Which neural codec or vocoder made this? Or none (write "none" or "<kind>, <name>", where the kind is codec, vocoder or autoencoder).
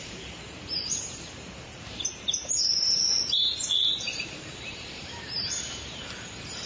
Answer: vocoder, BigVGAN v2